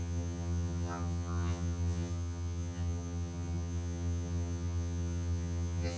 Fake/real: fake